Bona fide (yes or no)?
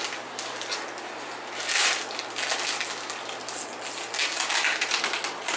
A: yes